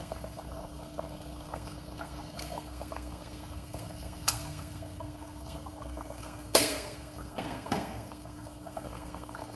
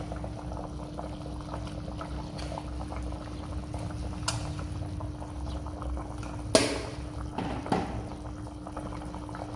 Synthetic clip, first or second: first